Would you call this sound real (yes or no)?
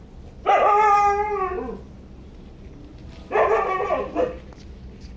yes